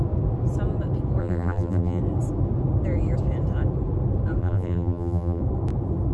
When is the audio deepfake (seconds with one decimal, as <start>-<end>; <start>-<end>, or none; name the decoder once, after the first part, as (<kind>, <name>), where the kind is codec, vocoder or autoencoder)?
1.2-2.0 (vocoder, BigVGAN v2); 4.4-5.4